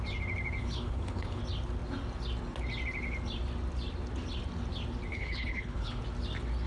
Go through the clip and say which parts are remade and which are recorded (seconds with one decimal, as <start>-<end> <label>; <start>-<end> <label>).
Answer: 0.0-0.6 recorded; 0.6-1.4 remade; 1.4-5.1 recorded; 5.1-6.0 remade; 6.0-6.7 recorded